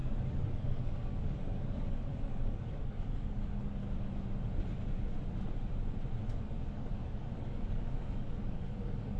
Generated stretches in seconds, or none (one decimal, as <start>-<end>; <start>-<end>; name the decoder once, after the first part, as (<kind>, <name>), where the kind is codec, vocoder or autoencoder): 0.0-3.8 (codec, DAC); 6.4-9.2